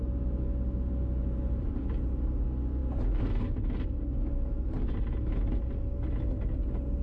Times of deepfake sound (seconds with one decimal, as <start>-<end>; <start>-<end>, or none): 1.2-1.8